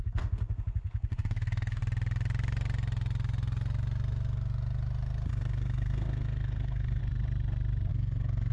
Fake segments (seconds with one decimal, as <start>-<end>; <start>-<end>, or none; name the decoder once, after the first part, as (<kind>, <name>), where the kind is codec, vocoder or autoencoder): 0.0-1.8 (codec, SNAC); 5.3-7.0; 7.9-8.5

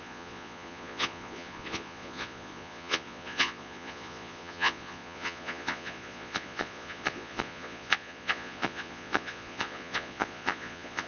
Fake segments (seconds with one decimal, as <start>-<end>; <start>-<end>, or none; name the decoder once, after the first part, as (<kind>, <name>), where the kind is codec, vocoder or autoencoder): 0.0-11.1 (vocoder, Vocos)

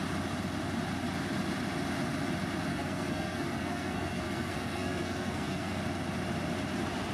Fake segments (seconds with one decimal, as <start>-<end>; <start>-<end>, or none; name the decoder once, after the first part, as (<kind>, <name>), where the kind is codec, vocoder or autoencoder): 2.7-5.8 (codec, SNAC)

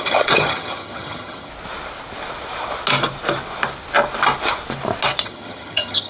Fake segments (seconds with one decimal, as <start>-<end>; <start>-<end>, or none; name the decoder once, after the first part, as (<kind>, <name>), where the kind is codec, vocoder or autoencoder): 0.0-1.5 (vocoder, HiFi-GAN); 5.2-6.1

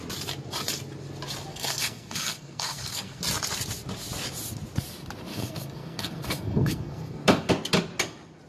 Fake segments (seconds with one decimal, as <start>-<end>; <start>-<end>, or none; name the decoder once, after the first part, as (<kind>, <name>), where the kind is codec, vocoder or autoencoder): 1.5-3.2 (codec, SNAC); 5.3-7.5